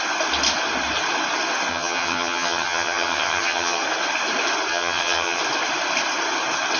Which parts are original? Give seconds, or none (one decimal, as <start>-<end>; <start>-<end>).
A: 0.0-1.7; 3.8-4.7; 5.4-6.8

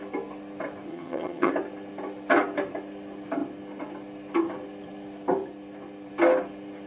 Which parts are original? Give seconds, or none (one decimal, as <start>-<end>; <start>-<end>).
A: 0.0-0.9; 1.5-6.9

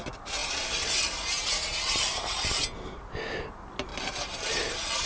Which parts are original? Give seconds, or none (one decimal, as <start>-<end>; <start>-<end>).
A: 0.0-5.1

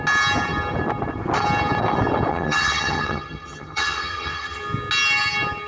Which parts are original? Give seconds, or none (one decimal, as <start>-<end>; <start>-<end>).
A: 0.0-2.3; 4.6-5.7